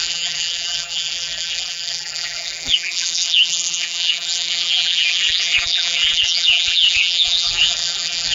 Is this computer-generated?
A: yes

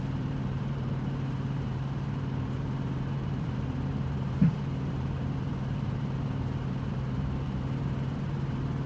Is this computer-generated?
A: yes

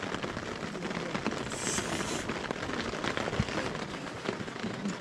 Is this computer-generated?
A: no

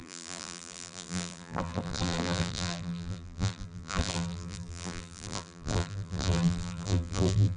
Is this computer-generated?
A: yes